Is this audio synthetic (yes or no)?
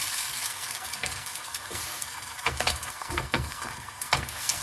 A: yes